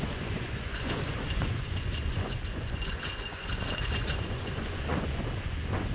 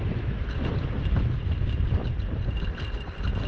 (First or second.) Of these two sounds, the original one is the second